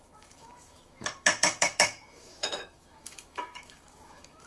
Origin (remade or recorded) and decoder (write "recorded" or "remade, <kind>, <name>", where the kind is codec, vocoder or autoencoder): remade, autoencoder, DAC-VAE